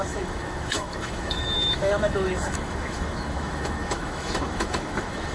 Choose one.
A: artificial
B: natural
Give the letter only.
A